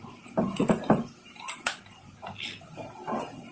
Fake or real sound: real